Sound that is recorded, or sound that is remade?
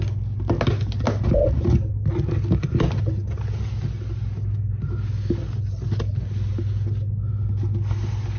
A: recorded